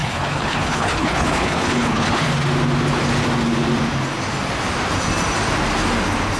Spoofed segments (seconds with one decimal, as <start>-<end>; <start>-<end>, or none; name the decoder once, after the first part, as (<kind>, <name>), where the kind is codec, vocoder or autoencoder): 0.0-2.3 (codec, HILCodec)